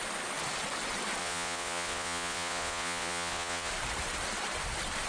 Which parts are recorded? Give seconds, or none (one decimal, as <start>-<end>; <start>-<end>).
0.0-1.2; 3.7-5.1